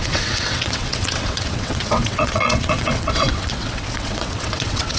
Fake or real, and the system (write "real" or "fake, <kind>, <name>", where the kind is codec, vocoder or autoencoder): fake, vocoder, WaveNeXt